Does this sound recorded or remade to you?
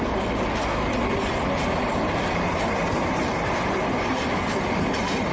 recorded